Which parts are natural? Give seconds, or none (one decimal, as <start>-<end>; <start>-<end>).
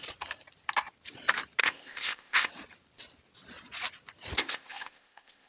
0.0-1.6; 2.5-4.4